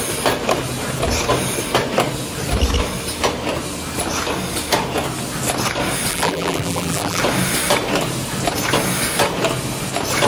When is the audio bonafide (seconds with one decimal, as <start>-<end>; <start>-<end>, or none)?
0.0-6.1; 7.2-10.3